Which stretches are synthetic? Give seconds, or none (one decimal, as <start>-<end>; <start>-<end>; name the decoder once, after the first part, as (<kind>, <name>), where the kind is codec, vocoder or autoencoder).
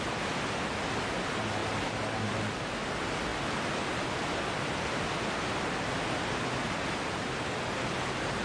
none